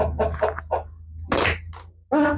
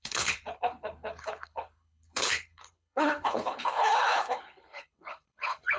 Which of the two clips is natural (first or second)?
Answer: first